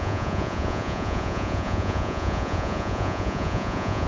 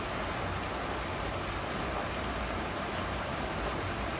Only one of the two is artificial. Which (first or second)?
first